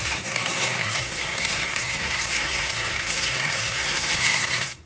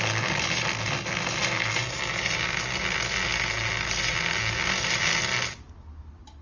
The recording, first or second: second